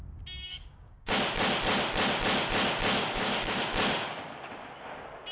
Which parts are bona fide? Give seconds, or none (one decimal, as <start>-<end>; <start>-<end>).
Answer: 0.0-0.5; 1.1-3.0; 3.6-5.3